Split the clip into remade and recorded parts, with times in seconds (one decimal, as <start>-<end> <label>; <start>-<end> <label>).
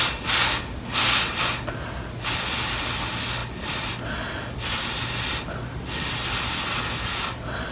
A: 0.0-7.7 recorded